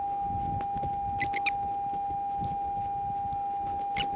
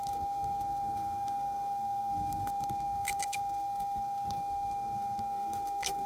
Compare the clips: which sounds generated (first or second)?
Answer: second